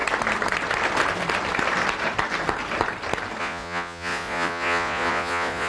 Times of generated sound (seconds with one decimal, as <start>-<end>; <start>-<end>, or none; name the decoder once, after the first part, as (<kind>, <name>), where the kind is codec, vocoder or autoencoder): 3.4-5.7 (vocoder, Vocos)